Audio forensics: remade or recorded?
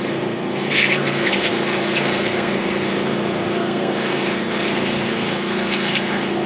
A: remade